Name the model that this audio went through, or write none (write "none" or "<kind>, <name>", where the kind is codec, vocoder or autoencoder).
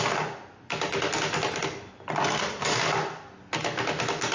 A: none